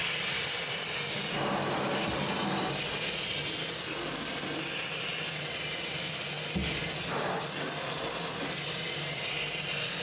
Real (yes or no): yes